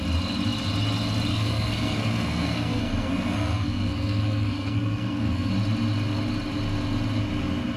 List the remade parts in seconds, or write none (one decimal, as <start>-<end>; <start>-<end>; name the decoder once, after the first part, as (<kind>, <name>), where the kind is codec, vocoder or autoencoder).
1.3-5.5 (codec, SNAC)